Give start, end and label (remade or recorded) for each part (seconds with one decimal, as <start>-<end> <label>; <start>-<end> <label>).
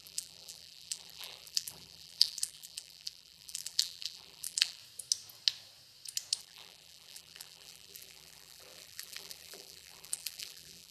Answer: 0.0-4.8 remade; 4.8-6.4 recorded; 6.4-10.9 remade